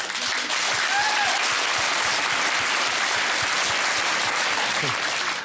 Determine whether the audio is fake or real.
real